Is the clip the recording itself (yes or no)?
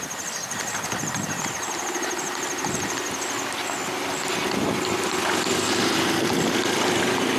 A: yes